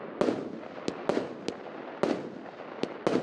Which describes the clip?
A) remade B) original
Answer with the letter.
B